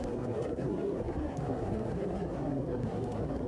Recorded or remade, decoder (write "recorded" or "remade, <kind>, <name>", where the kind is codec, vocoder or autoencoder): remade, codec, SNAC